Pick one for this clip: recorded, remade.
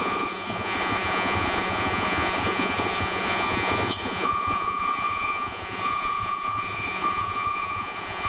remade